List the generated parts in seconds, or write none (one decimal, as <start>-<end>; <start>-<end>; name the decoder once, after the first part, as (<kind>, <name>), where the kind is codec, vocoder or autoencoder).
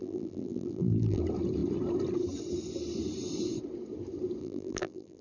0.0-1.2 (vocoder, BigVGAN v2); 4.4-5.2